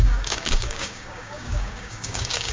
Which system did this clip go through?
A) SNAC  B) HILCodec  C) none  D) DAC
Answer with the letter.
D